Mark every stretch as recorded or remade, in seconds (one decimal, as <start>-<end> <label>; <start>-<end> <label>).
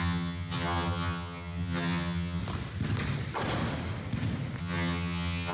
0.0-2.4 remade; 2.4-4.6 recorded; 4.6-5.5 remade